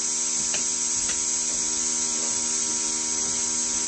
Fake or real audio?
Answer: real